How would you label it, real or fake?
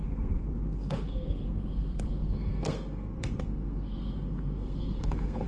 fake